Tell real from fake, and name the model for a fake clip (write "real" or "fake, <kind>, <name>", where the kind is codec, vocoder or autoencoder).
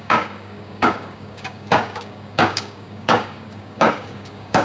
fake, codec, DAC